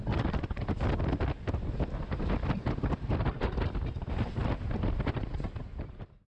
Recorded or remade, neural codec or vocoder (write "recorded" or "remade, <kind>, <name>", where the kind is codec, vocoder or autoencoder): recorded